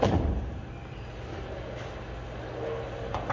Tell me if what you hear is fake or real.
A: real